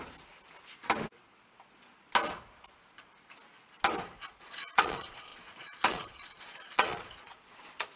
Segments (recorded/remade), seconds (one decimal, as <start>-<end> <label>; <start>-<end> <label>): 0.0-4.3 recorded; 4.3-8.0 remade